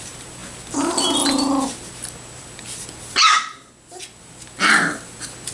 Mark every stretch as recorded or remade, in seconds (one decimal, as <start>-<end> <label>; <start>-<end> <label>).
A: 0.0-5.5 recorded